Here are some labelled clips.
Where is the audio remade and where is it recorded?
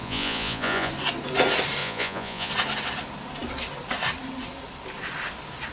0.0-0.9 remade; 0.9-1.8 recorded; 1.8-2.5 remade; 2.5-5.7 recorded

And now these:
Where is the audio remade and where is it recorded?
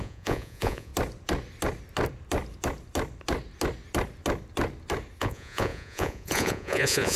0.0-0.9 remade; 0.9-5.2 recorded; 5.2-7.2 remade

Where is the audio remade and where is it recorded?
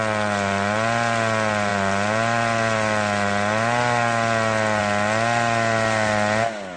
0.0-6.8 recorded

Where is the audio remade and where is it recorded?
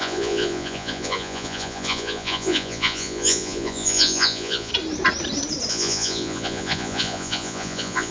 0.0-4.7 remade; 4.7-5.7 recorded; 5.7-8.1 remade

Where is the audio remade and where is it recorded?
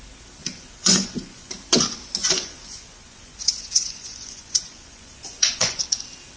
0.0-0.4 recorded; 0.4-1.5 remade; 1.5-2.2 recorded; 2.2-5.8 remade; 5.8-6.4 recorded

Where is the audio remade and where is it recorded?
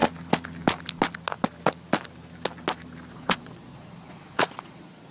0.0-3.1 recorded; 3.1-5.1 remade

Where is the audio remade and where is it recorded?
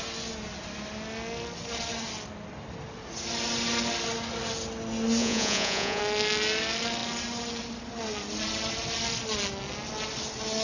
0.0-5.2 recorded; 5.2-6.0 remade; 6.0-10.6 recorded